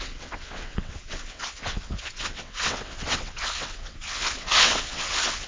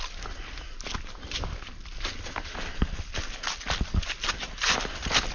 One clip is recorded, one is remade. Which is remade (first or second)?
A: first